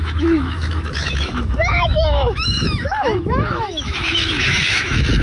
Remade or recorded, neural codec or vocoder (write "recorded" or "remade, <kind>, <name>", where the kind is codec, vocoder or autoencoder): remade, autoencoder, DAC-VAE